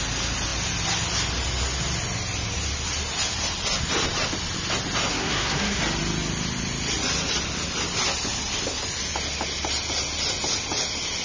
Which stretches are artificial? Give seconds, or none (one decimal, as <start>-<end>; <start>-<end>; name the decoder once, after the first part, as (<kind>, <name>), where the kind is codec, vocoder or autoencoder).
5.1-5.8 (codec, SNAC)